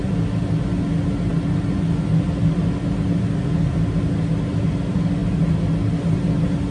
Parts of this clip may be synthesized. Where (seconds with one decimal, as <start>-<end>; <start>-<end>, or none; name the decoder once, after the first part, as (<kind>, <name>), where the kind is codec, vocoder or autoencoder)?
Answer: none

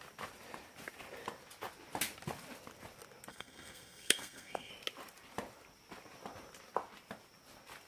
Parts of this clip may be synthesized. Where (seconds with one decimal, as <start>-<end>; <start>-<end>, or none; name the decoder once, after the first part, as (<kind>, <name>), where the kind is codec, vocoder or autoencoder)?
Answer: 3.3-4.7 (codec, SNAC)

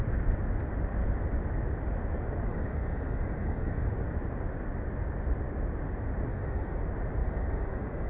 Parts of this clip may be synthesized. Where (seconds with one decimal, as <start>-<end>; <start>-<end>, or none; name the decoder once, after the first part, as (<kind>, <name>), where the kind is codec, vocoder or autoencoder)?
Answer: 2.5-3.9 (codec, DAC); 6.3-6.8; 7.2-8.1

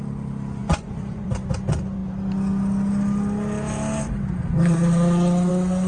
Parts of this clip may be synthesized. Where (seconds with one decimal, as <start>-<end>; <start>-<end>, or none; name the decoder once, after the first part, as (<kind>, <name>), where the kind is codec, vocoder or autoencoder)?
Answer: 0.6-1.3 (vocoder, Vocos)